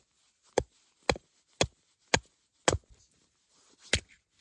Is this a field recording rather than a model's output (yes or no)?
yes